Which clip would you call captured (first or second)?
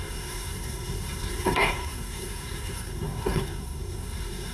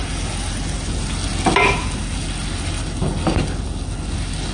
second